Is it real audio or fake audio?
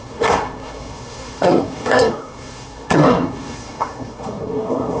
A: fake